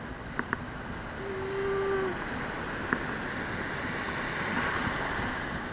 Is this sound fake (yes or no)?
no